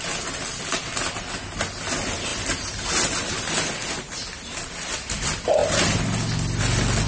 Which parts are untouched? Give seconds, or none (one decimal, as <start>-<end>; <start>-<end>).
0.0-7.1